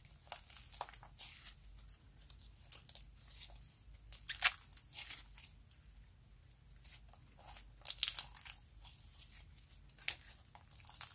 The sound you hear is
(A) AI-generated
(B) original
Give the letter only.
B